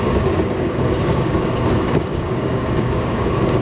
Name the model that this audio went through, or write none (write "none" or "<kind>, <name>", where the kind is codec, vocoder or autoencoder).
codec, DAC